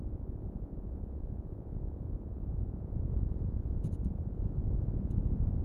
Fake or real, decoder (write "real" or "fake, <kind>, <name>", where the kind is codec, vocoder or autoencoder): fake, vocoder, Vocos